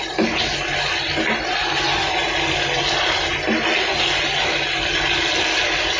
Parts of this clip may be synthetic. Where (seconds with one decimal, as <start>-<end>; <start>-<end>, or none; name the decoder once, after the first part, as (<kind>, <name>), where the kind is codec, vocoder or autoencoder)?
none